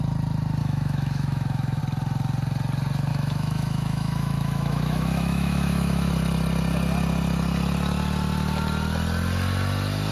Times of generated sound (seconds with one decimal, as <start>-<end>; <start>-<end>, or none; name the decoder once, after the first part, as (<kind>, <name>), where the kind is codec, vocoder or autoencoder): 0.6-1.8 (autoencoder, DAC-VAE); 3.1-6.1